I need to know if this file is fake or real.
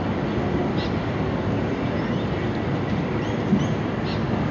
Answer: real